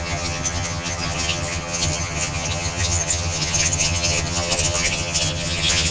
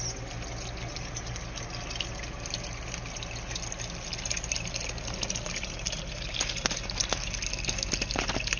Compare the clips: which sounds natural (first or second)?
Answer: second